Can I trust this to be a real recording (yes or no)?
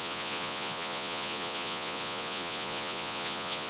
no